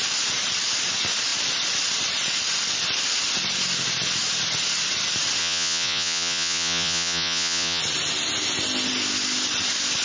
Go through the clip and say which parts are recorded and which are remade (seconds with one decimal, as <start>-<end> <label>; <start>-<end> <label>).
0.0-5.4 recorded; 5.4-7.8 remade; 7.8-10.0 recorded